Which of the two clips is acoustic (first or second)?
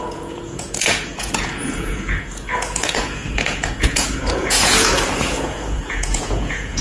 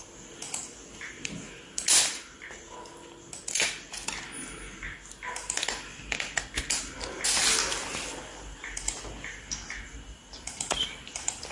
second